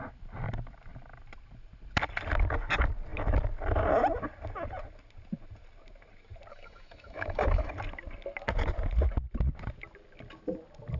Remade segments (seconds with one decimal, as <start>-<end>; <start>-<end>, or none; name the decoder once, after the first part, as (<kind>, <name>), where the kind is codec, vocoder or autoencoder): 6.5-7.7 (autoencoder, DAC-VAE)